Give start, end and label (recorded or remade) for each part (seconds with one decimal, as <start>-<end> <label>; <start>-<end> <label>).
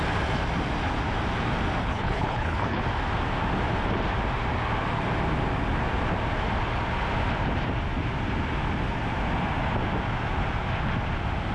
0.0-1.8 recorded; 1.8-2.8 remade; 2.8-11.5 recorded